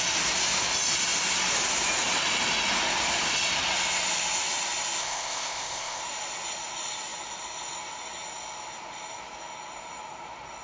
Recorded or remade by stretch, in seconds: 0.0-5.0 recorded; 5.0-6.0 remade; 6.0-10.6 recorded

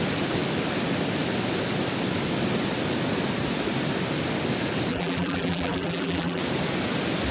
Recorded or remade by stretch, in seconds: 0.0-4.9 recorded; 4.9-6.4 remade; 6.4-7.3 recorded

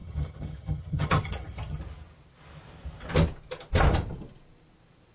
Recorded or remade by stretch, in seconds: 0.0-1.8 remade; 1.8-5.1 recorded